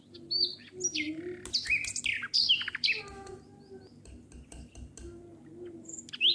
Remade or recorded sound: recorded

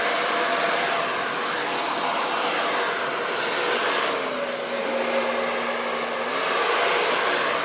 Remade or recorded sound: recorded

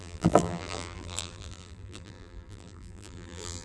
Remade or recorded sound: remade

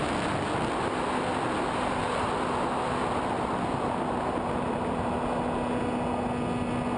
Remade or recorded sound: recorded